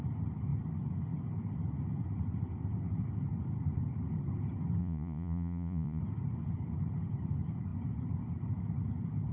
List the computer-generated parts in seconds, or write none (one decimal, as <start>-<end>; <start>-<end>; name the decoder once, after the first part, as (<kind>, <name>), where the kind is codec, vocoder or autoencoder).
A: 4.8-6.0 (vocoder, Vocos)